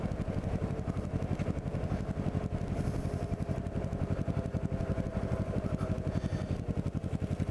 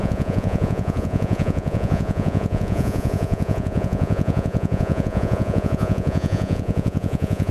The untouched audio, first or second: first